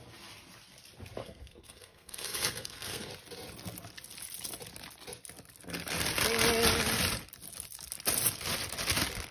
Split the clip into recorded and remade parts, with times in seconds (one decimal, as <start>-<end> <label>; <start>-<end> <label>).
0.0-1.2 recorded; 1.2-3.1 remade; 3.1-9.3 recorded